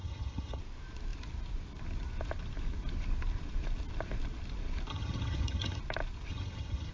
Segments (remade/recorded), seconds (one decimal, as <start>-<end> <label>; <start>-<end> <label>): 0.0-0.6 remade; 0.6-4.9 recorded; 4.9-5.8 remade; 5.8-6.3 recorded; 6.3-6.9 remade